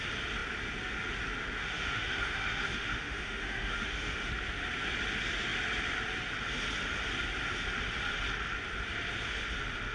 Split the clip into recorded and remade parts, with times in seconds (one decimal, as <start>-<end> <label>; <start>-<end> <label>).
0.0-1.6 recorded; 1.6-4.3 remade; 4.3-9.9 recorded